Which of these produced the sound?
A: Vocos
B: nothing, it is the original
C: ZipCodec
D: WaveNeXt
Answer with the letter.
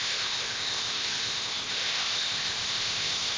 C